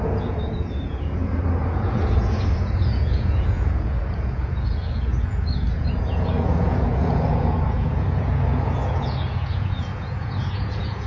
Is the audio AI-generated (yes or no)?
yes